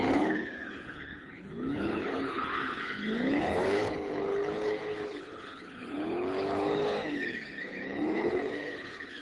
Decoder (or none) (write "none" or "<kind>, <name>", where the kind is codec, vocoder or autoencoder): codec, HILCodec